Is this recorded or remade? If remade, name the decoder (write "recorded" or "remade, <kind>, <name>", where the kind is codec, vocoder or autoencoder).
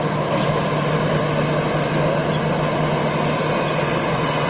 recorded